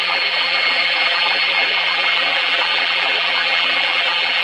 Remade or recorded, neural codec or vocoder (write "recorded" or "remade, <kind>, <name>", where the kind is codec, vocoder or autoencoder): remade, vocoder, BigVGAN v2